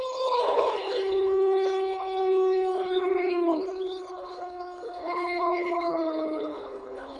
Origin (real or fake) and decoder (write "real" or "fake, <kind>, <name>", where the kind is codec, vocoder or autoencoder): fake, codec, HILCodec